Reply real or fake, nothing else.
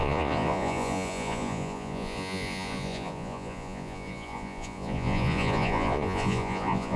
fake